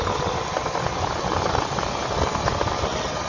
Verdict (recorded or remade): recorded